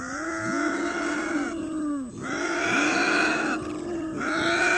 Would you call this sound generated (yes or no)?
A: no